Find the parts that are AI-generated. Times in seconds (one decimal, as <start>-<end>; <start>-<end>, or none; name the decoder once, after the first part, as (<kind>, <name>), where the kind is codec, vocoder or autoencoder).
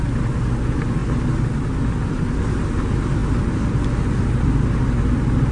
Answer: none